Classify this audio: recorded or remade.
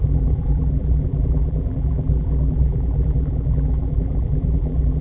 remade